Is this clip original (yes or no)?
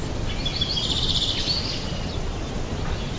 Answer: yes